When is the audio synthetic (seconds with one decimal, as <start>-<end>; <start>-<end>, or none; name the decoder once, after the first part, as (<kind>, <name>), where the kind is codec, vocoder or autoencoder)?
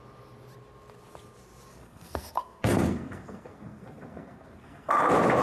1.7-4.9 (codec, SNAC)